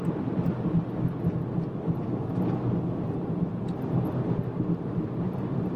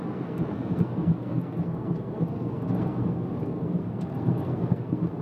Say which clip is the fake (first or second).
second